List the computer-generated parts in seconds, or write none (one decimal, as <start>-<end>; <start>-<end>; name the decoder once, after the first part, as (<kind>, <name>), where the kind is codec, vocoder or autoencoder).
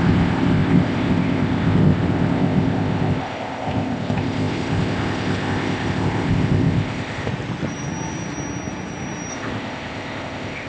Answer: 0.0-7.3 (codec, ZipCodec); 9.3-10.7